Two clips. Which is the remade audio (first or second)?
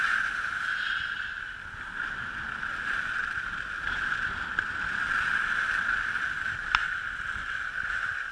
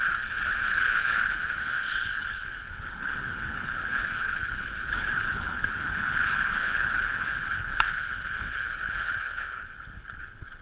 second